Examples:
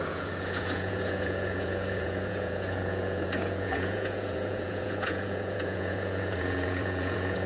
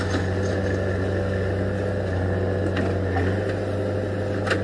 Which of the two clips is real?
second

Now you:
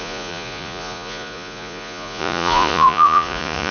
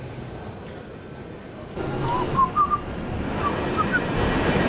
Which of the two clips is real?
second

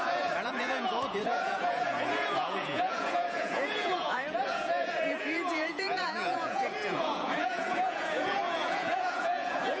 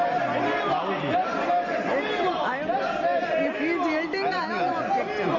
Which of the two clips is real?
second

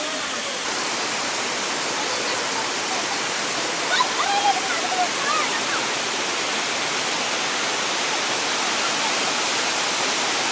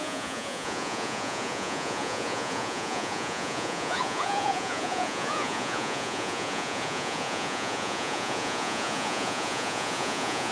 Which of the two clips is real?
first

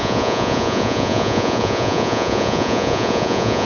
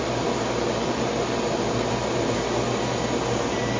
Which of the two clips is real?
second